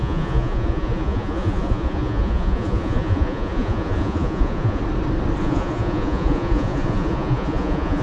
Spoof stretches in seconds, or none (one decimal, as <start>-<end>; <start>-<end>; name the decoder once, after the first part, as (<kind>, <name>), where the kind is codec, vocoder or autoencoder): 0.0-4.8 (vocoder, Vocos); 5.4-8.0

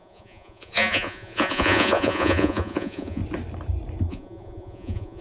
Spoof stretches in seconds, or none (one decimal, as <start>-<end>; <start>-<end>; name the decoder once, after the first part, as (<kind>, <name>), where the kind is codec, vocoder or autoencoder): 0.0-3.2 (vocoder, Vocos); 4.1-5.2

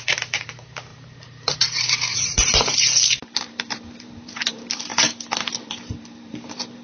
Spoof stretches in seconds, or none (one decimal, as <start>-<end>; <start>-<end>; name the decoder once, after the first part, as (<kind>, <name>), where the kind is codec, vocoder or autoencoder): 0.0-4.9 (vocoder, BigVGAN v2); 5.6-6.8